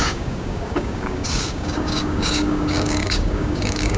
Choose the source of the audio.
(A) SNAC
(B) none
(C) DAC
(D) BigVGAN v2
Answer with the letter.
C